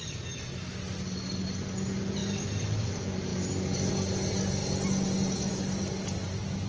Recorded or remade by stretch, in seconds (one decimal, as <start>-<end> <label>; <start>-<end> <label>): 0.0-2.2 recorded; 2.2-2.9 remade; 2.9-3.3 recorded; 3.3-3.9 remade; 3.9-6.7 recorded

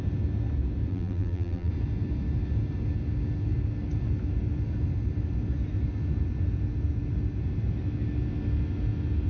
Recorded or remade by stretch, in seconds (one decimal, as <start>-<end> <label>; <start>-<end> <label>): 0.0-0.9 recorded; 0.9-1.7 remade; 1.7-9.3 recorded

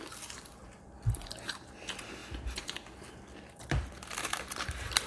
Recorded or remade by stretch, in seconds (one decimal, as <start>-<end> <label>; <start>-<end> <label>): 0.0-2.2 remade; 2.2-3.7 recorded; 3.7-5.1 remade

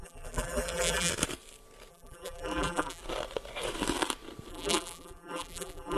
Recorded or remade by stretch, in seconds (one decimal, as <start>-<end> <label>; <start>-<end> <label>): 0.0-1.1 remade; 1.1-1.9 recorded; 1.9-3.0 remade; 3.0-4.5 recorded; 4.5-6.0 remade

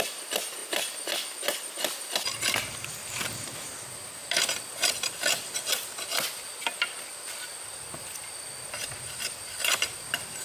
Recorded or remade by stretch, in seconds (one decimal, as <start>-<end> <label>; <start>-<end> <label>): 0.0-0.6 recorded; 0.6-2.1 remade; 2.1-4.2 recorded; 4.2-6.4 remade; 6.4-10.4 recorded